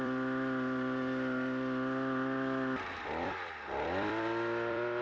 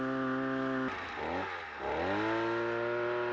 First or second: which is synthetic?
first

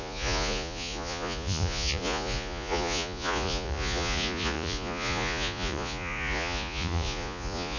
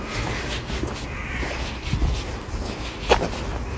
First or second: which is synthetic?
first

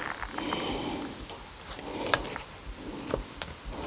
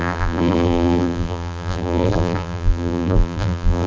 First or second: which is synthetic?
second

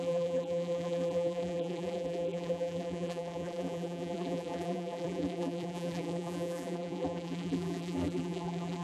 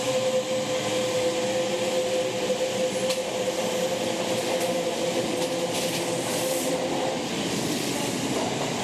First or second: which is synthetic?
first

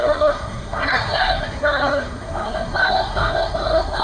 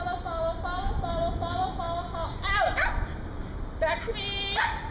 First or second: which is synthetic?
first